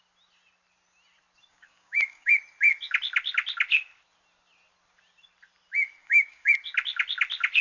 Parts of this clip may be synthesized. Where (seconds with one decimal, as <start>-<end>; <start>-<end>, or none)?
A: 1.5-2.3; 6.0-6.5